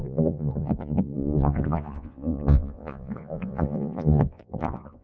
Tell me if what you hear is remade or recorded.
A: remade